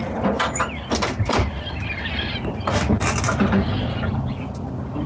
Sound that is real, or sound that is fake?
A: real